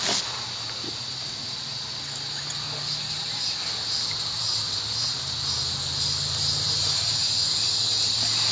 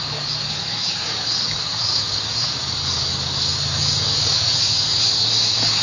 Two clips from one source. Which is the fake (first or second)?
second